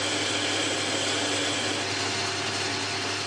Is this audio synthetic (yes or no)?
no